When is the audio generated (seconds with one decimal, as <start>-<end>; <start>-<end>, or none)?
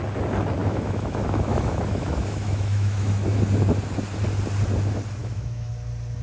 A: 0.6-3.4; 5.2-5.7